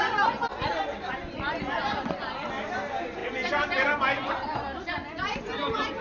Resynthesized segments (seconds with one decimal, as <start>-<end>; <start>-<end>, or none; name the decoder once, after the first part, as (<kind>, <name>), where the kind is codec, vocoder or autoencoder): none